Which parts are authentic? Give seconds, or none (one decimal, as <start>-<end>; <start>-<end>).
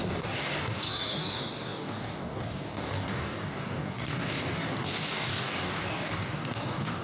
none